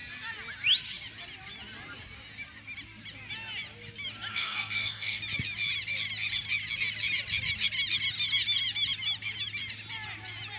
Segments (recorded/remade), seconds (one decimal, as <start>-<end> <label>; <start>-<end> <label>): 0.0-4.3 recorded; 4.3-5.2 remade; 5.2-10.6 recorded